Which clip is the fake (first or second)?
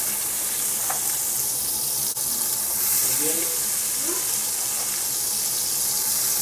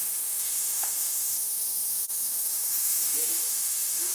second